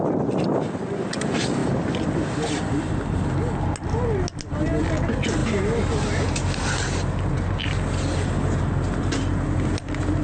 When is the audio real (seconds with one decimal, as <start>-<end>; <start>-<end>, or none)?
0.0-10.2